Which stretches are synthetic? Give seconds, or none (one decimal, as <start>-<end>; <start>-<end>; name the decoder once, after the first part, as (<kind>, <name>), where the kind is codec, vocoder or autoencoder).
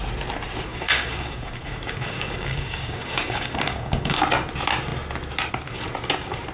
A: 0.7-4.2 (codec, DAC)